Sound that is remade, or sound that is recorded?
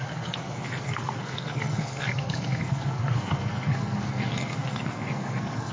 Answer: remade